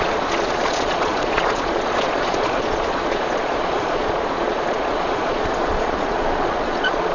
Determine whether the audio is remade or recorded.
remade